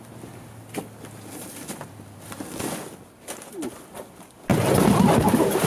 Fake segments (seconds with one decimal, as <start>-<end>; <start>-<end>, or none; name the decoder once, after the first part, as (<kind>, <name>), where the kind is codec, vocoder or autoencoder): none